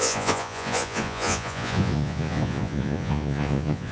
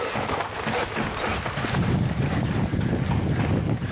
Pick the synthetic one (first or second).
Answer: first